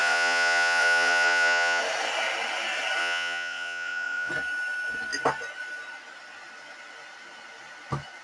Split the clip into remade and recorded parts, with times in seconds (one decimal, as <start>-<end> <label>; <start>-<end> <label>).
0.0-1.8 remade; 1.8-3.0 recorded; 3.0-4.3 remade; 4.3-8.2 recorded

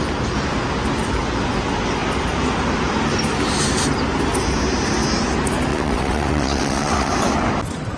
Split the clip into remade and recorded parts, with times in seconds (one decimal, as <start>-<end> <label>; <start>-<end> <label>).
0.0-5.7 recorded; 5.7-7.1 remade; 7.1-8.0 recorded

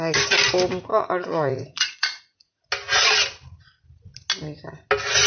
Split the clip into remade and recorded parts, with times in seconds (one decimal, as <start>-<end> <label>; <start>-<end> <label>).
0.0-0.9 recorded; 0.9-2.6 remade; 2.6-5.3 recorded

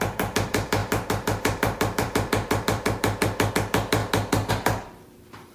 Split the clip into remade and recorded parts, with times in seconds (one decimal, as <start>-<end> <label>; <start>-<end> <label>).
0.0-4.0 remade; 4.0-4.5 recorded; 4.5-5.5 remade

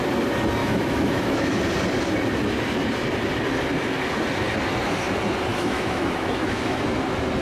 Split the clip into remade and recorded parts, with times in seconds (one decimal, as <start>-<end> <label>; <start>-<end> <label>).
0.0-0.6 recorded; 0.6-1.6 remade; 1.6-5.5 recorded; 5.5-6.8 remade; 6.8-7.4 recorded

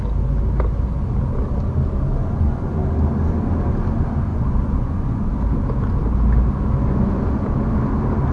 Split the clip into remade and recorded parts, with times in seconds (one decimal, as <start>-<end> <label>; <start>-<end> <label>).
0.0-2.2 recorded; 2.2-2.8 remade; 2.8-4.3 recorded; 4.3-5.3 remade; 5.3-8.3 recorded

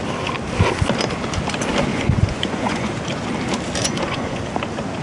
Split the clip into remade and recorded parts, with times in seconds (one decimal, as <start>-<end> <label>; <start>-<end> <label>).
0.0-1.9 recorded; 1.9-2.9 remade; 2.9-3.8 recorded; 3.8-4.4 remade; 4.4-5.0 recorded